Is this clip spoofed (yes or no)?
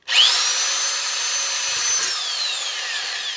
no